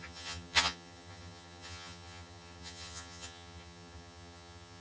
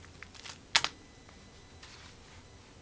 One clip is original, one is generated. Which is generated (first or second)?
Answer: first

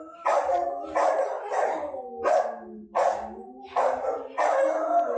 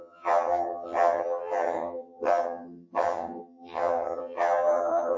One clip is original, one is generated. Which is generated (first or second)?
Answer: second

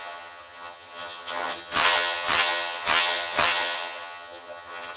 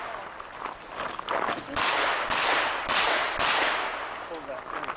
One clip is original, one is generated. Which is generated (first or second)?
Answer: first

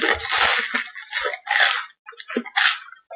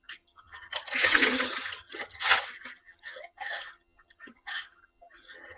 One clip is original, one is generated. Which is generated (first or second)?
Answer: second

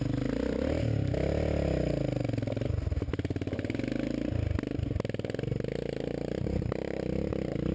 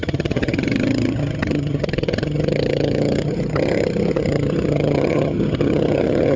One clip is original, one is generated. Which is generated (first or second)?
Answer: second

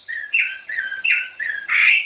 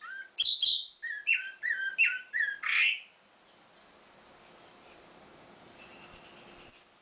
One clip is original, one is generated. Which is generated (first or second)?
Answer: first